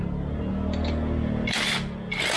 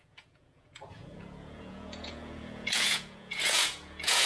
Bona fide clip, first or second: first